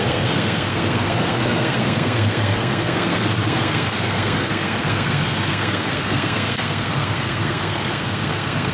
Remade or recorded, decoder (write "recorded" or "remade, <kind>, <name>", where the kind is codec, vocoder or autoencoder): remade, codec, SNAC